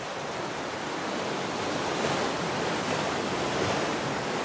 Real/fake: fake